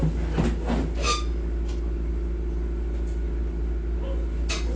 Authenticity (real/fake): real